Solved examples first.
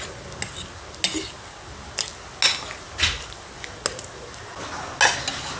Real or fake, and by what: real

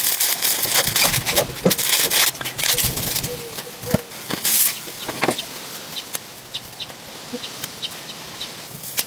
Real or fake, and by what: real